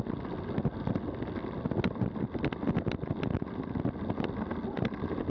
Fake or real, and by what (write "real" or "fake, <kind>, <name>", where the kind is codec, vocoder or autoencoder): real